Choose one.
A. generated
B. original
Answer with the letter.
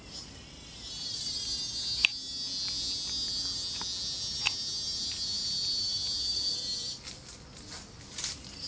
B